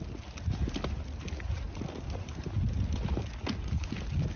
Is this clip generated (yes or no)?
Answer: no